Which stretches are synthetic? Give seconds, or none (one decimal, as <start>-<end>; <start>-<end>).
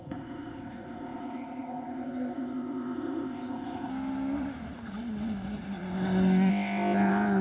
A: 0.0-3.9; 6.5-7.4